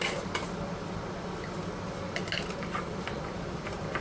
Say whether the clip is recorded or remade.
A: recorded